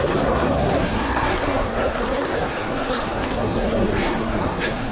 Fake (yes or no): yes